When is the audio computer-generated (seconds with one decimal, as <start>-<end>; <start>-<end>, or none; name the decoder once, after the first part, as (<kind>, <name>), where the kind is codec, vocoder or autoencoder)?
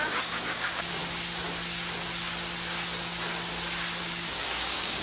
0.0-1.0 (codec, DAC); 4.0-5.0